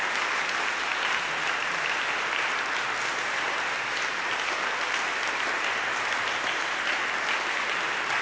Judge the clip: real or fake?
real